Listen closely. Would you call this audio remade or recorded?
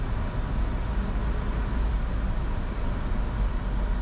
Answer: recorded